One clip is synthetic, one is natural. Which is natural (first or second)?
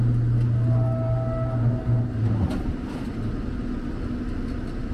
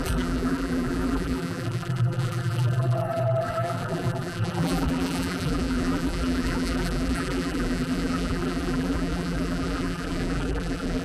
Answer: first